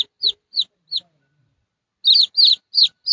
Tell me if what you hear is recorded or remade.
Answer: recorded